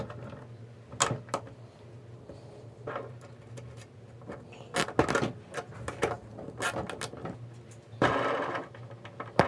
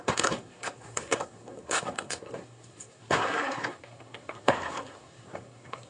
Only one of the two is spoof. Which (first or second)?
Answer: second